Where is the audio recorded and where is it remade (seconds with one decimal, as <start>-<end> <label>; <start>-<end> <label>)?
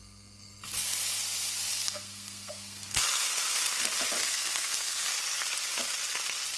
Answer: 0.0-1.7 recorded; 1.7-3.0 remade; 3.0-4.2 recorded; 4.2-5.1 remade; 5.1-6.6 recorded